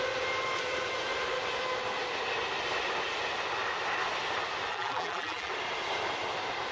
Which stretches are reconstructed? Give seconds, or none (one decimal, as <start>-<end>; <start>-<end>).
4.7-5.5